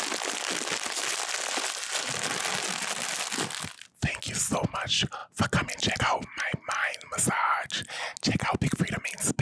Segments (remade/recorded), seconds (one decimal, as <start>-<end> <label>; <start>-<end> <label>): 0.0-9.4 recorded

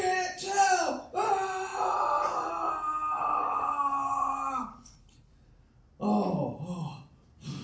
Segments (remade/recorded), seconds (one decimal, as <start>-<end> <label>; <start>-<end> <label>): 0.0-4.6 recorded; 4.6-5.3 remade; 5.3-7.6 recorded

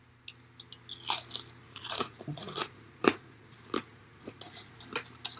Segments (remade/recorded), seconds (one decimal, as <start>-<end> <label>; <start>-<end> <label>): 0.0-1.6 recorded; 1.6-4.8 remade; 4.8-5.4 recorded

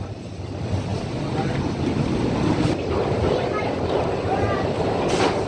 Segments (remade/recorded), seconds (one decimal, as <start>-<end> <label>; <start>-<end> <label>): 0.0-0.9 recorded; 0.9-4.2 remade; 4.2-5.5 recorded

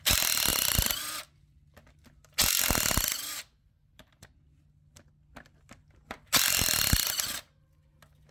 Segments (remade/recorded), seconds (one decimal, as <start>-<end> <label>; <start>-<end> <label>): 0.0-0.5 recorded; 0.5-1.0 remade; 1.0-8.3 recorded

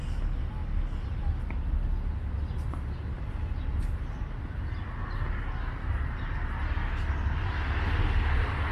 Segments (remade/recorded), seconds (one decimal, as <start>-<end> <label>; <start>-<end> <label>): 0.0-8.7 recorded